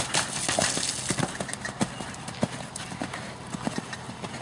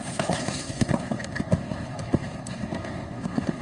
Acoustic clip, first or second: first